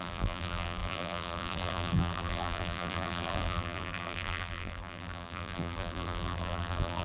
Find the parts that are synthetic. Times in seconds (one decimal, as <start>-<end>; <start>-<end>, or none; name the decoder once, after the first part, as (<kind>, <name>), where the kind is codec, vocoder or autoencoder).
0.0-7.0 (vocoder, BigVGAN v2)